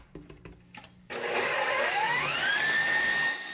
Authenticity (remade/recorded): remade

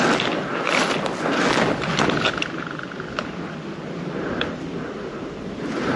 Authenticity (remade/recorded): recorded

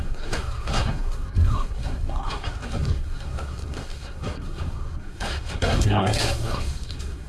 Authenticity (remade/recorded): remade